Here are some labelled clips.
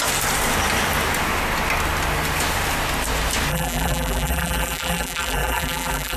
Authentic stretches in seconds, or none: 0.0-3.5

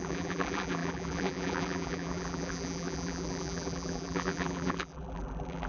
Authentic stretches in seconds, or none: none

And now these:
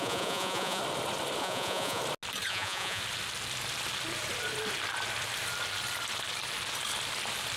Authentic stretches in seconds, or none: 0.8-1.4; 2.0-2.5; 3.0-7.6

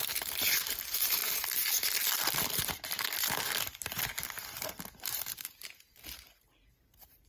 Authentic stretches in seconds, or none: 1.2-5.0

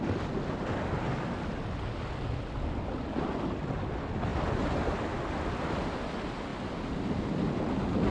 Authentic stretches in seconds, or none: 0.0-8.1